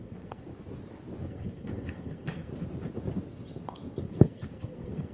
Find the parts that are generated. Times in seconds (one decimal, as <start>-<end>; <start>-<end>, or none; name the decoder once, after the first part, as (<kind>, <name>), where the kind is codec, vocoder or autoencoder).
0.0-0.5 (codec, SNAC); 1.2-2.5; 4.0-5.1